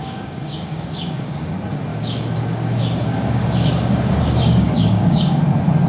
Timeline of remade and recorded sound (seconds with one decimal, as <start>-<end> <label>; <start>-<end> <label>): 0.0-1.5 remade; 1.5-1.9 recorded; 1.9-5.4 remade; 5.4-5.9 recorded